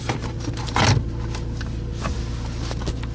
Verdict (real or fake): real